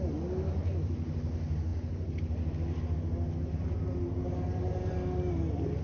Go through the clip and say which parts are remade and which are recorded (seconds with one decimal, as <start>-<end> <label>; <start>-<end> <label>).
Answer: 0.0-5.8 recorded